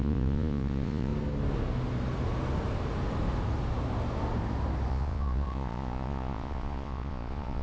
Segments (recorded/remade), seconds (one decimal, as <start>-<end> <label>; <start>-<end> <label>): 0.0-1.1 remade; 1.1-4.9 recorded; 4.9-7.6 remade